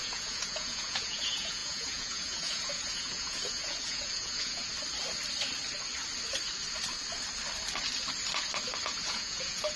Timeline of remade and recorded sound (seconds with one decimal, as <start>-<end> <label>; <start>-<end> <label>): 0.0-4.7 remade; 4.7-8.8 recorded; 8.8-9.8 remade